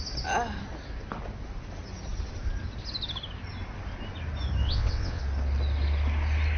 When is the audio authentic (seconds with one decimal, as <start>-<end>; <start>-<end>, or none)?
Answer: 0.0-4.6; 5.2-6.6